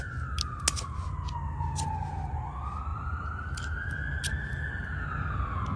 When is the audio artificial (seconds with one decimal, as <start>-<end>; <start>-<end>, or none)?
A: none